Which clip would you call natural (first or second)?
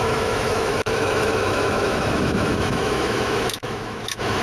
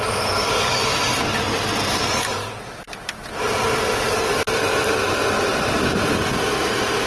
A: second